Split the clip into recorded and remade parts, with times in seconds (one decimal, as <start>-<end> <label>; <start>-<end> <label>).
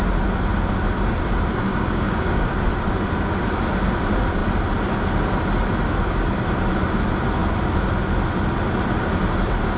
0.0-1.7 recorded; 1.7-2.7 remade; 2.7-9.8 recorded